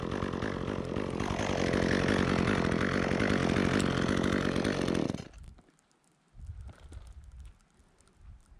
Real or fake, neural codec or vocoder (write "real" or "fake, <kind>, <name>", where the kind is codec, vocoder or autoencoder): real